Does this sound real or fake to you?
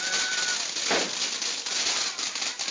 real